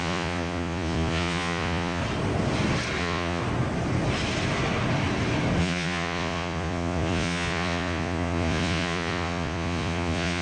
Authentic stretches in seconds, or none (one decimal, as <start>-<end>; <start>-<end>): 2.0-3.0; 3.4-5.6